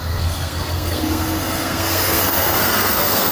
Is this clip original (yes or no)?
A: no